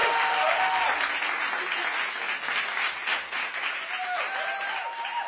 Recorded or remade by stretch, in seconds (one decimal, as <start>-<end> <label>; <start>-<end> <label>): 0.0-0.8 remade; 0.8-5.3 recorded